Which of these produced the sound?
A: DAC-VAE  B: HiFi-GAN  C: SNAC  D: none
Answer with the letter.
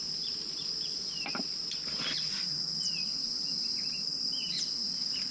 D